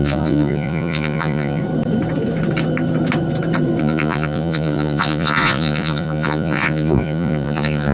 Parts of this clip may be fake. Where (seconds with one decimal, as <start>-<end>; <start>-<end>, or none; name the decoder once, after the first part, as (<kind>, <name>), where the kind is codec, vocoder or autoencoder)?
0.0-1.6 (vocoder, Vocos); 3.8-7.9